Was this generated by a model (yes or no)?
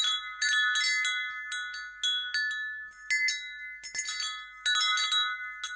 no